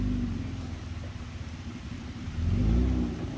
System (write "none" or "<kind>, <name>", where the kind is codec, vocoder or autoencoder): none